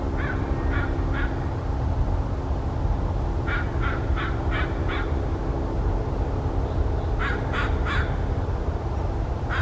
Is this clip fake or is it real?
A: real